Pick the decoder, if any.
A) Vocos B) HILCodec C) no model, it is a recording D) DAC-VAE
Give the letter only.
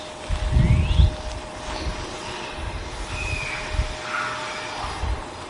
C